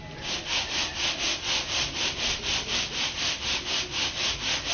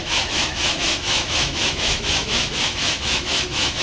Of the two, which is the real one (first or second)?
first